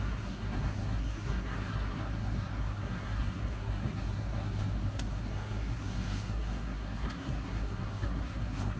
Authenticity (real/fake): fake